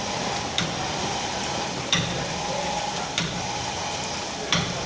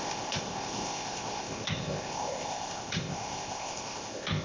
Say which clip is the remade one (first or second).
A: second